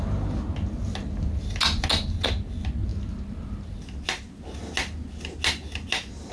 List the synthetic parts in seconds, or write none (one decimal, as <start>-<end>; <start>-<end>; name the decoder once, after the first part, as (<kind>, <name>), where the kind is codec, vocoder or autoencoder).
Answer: none